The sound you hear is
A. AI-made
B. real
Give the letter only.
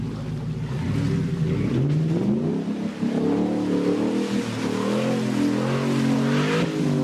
B